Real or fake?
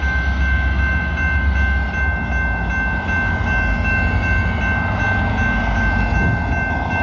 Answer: real